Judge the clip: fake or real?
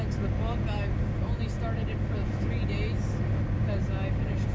real